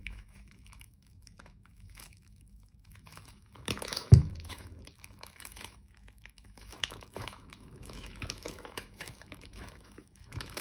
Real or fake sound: fake